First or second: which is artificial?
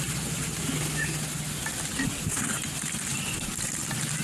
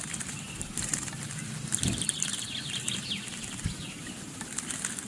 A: second